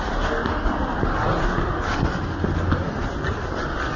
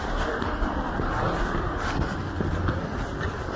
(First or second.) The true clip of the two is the first